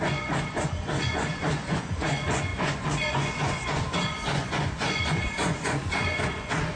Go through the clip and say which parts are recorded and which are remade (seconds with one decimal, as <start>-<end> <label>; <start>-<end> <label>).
0.0-6.8 remade